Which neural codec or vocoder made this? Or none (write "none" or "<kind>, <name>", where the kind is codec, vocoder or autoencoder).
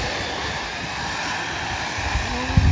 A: none